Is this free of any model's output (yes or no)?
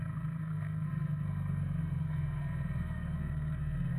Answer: no